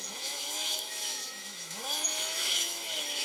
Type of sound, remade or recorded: remade